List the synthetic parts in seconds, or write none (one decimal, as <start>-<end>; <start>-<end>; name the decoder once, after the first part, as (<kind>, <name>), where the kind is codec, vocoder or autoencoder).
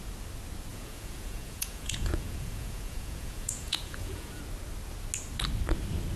0.7-4.4 (vocoder, Vocos)